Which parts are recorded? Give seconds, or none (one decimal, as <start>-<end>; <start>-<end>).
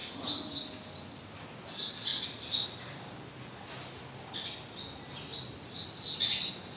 0.0-2.1; 3.1-5.3; 6.2-6.8